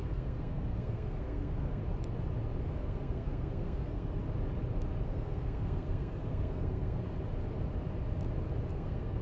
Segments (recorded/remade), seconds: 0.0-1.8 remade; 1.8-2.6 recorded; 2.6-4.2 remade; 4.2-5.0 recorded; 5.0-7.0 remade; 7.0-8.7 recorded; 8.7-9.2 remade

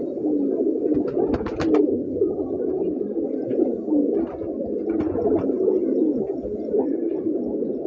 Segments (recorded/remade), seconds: 0.0-1.9 recorded; 1.9-2.6 remade; 2.6-7.9 recorded

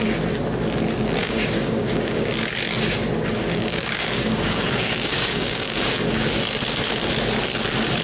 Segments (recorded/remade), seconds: 0.0-1.2 recorded; 1.2-2.3 remade; 2.3-3.4 recorded; 3.4-6.3 remade; 6.3-8.0 recorded